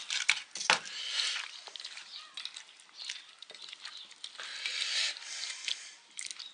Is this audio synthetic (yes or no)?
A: no